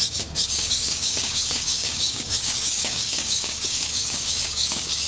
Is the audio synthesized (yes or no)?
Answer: yes